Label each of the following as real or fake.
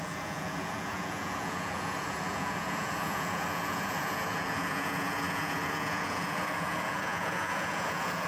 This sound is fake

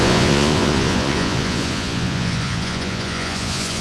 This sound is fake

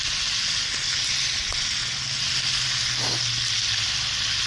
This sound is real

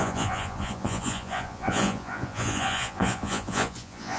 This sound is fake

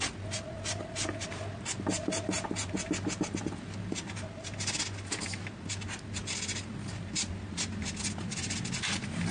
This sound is real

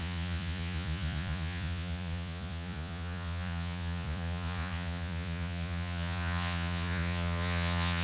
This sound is fake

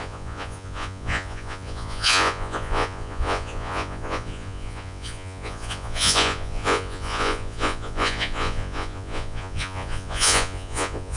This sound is fake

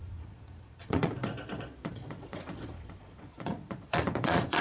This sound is fake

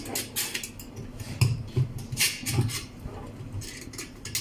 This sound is real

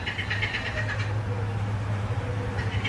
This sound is real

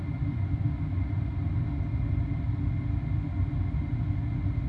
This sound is real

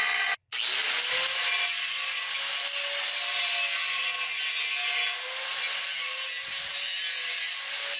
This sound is real